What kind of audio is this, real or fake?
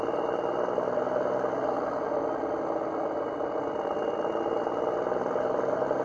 real